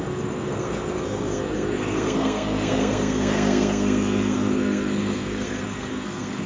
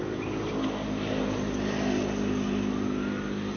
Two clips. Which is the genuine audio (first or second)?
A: second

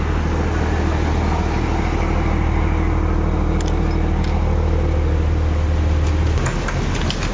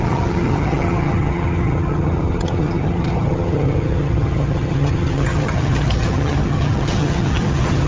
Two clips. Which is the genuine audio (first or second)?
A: first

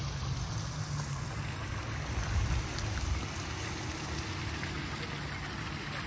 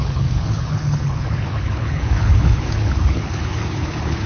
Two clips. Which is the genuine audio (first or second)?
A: first